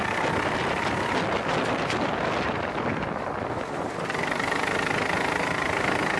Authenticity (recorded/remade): recorded